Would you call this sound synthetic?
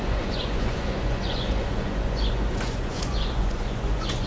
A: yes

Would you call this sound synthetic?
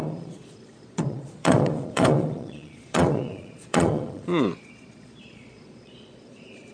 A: yes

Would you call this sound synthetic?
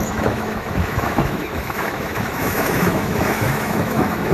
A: yes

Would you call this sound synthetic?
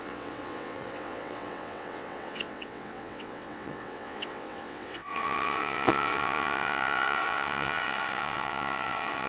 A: yes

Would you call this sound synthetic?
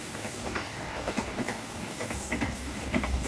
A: yes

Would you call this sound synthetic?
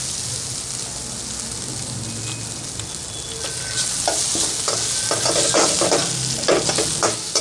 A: no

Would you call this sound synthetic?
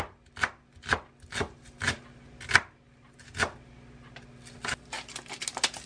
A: no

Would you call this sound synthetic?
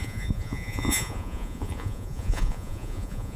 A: yes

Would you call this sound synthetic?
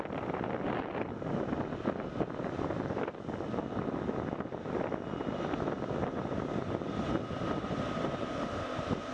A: no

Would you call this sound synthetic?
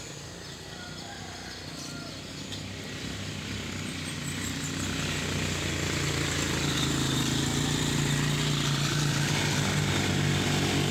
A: no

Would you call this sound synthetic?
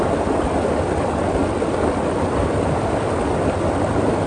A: no